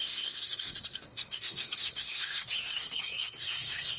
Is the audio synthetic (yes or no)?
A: yes